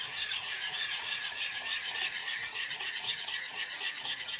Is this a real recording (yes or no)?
no